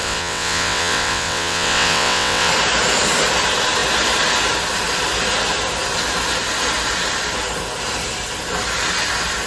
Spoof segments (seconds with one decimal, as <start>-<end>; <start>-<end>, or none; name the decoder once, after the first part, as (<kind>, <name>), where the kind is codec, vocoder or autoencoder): 0.0-2.5 (vocoder, WaveNeXt)